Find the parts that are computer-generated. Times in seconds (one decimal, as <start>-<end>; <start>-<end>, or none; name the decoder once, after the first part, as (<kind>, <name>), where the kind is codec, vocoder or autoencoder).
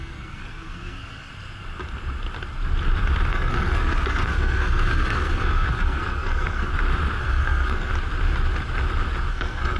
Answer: 0.0-1.3 (codec, SNAC); 3.3-6.7; 7.2-7.9; 9.3-9.8